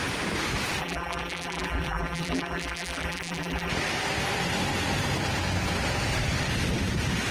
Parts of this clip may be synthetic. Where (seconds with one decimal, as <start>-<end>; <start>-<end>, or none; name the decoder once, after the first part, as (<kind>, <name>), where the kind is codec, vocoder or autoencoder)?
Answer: 0.8-3.7 (vocoder, BigVGAN v2)